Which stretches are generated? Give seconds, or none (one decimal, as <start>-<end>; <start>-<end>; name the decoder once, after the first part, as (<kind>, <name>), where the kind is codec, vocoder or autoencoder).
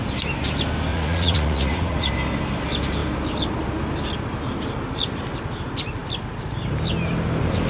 0.9-2.1 (vocoder, Vocos)